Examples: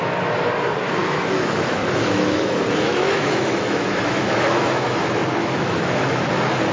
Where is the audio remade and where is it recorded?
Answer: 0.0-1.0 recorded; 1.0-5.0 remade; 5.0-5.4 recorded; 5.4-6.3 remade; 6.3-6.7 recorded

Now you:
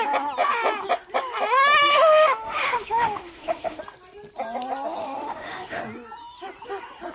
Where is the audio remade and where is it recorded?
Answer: 0.0-1.9 recorded; 1.9-3.8 remade; 3.8-5.0 recorded; 5.0-5.8 remade; 5.8-7.1 recorded

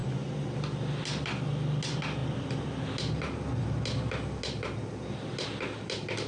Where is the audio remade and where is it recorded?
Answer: 0.0-6.3 recorded

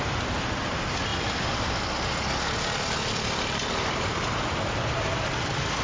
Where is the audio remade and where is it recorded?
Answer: 0.0-5.8 recorded

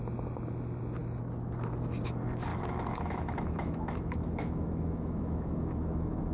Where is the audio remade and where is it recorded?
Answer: 0.0-2.5 recorded; 2.5-6.3 remade